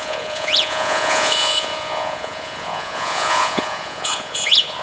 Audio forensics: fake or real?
fake